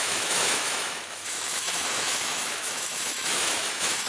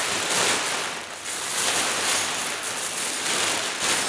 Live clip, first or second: second